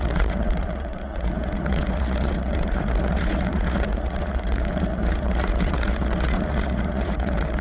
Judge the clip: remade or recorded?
remade